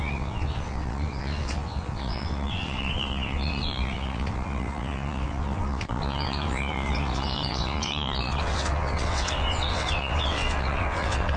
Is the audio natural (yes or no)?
no